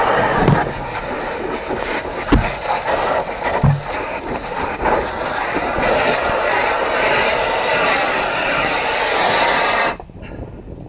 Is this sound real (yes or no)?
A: yes